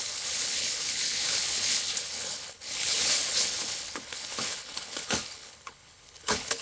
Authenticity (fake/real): fake